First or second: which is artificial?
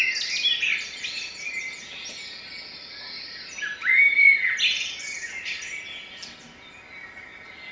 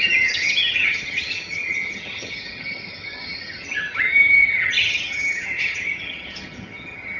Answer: second